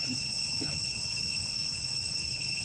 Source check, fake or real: fake